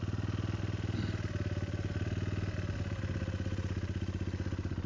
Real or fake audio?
real